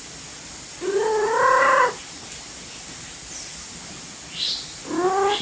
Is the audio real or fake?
real